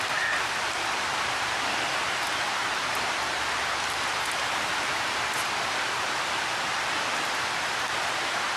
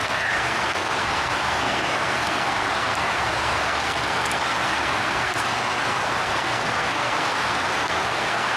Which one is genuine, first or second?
first